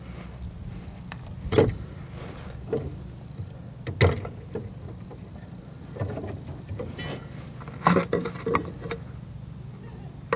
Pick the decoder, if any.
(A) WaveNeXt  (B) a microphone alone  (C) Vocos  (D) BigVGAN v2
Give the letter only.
B